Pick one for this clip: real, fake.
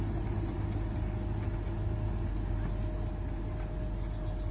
real